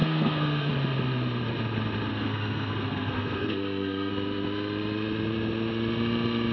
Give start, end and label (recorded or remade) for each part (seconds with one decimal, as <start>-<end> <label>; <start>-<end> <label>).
0.0-0.7 remade; 0.7-2.1 recorded; 2.1-4.1 remade; 4.1-6.5 recorded